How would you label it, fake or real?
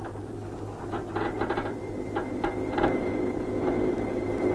real